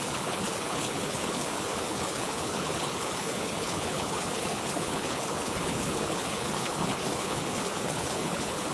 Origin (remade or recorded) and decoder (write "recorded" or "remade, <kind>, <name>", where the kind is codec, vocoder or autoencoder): remade, codec, HILCodec